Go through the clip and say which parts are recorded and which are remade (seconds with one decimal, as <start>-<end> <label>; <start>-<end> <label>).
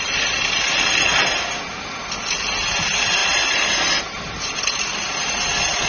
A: 0.0-3.2 recorded; 3.2-4.2 remade; 4.2-5.9 recorded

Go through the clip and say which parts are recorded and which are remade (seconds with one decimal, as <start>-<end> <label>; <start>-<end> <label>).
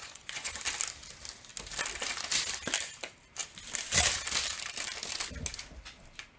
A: 0.0-0.6 remade; 0.6-6.4 recorded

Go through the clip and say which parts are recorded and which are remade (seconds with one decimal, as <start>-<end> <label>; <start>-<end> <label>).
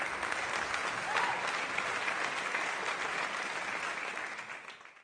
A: 0.0-5.0 recorded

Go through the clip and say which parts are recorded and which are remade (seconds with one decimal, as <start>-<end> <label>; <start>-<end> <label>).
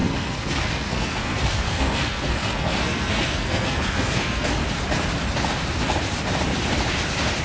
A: 0.0-4.6 remade; 4.6-7.4 recorded